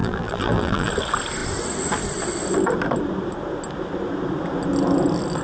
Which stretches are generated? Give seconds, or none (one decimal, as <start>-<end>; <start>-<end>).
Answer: 0.0-0.9